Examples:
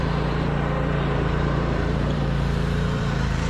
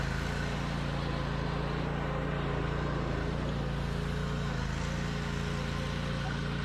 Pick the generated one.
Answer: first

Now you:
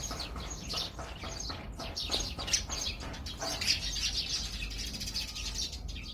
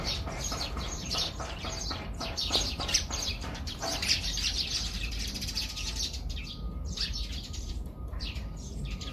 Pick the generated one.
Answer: second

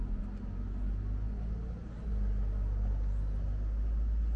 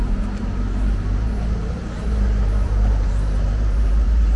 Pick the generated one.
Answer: second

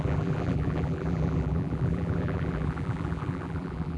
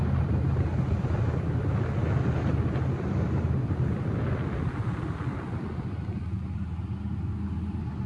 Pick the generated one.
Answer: first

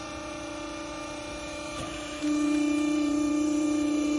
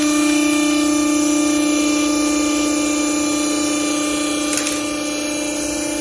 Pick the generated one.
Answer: first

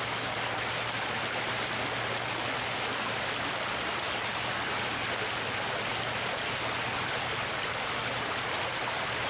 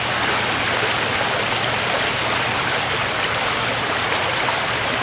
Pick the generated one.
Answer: second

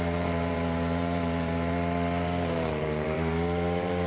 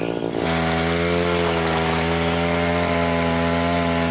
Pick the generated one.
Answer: first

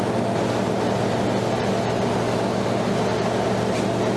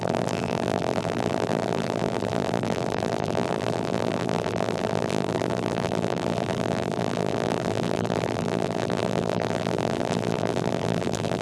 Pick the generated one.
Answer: second